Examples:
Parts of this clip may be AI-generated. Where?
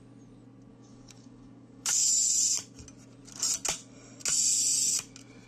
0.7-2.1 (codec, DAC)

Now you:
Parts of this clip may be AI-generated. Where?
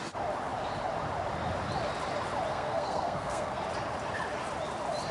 2.5-3.6 (codec, SNAC)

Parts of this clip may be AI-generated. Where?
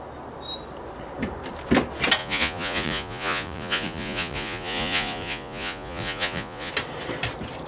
2.2-6.7 (vocoder, Vocos)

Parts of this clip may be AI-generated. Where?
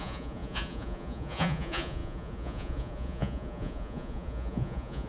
0.0-5.1 (vocoder, Vocos)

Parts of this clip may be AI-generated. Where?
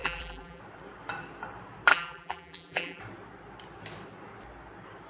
0.0-0.6 (vocoder, BigVGAN v2); 1.9-3.0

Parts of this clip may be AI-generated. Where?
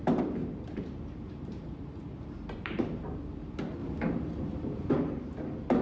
0.4-3.2 (vocoder, BigVGAN v2); 3.8-4.9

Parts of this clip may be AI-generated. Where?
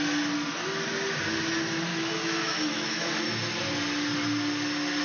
1.9-3.1 (autoencoder, DAC-VAE)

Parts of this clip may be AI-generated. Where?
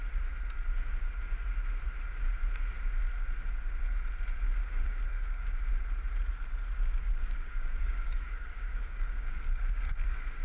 4.6-5.5 (codec, DAC); 6.8-10.4